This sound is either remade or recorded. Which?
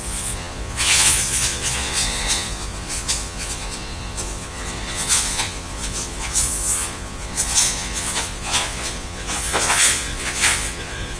remade